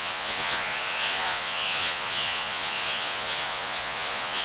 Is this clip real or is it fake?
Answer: fake